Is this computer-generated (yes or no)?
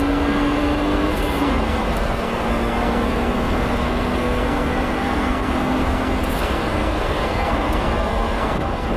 yes